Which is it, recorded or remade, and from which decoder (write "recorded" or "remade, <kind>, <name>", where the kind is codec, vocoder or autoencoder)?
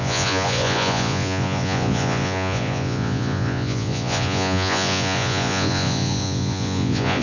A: remade, vocoder, Vocos